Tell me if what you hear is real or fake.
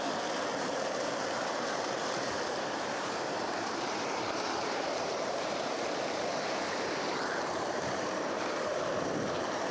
fake